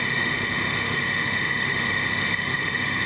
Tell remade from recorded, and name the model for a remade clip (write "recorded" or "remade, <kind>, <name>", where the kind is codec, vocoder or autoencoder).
remade, autoencoder, DAC-VAE